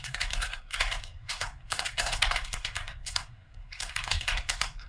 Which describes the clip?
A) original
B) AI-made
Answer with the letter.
B